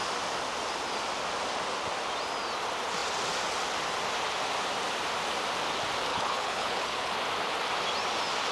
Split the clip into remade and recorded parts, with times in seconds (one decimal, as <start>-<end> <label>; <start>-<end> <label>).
0.0-6.1 recorded; 6.1-7.1 remade; 7.1-8.5 recorded